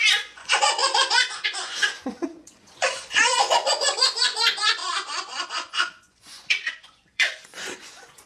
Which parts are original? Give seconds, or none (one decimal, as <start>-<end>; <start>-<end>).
none